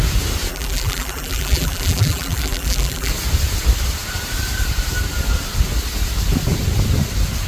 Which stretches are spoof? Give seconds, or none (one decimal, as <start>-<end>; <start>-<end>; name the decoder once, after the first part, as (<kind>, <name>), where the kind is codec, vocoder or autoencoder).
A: 0.5-3.1 (vocoder, BigVGAN v2)